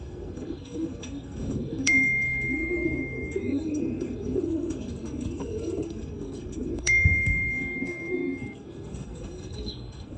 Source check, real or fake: fake